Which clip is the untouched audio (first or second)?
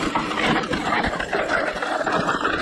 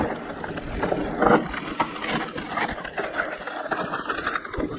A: second